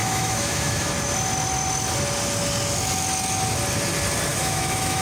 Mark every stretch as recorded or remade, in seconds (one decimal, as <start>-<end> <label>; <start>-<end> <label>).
0.0-0.9 remade; 0.9-4.3 recorded; 4.3-5.0 remade